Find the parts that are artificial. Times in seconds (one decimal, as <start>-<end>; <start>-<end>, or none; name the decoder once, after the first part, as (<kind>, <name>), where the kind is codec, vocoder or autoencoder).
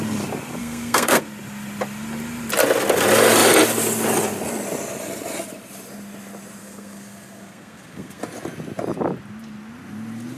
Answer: 0.6-1.2 (codec, SNAC); 6.6-8.2